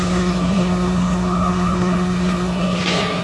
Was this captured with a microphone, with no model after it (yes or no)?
no